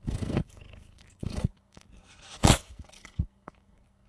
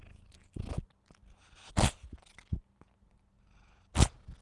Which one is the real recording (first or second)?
second